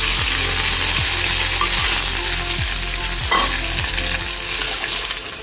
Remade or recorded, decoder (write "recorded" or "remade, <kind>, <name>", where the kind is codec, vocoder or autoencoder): recorded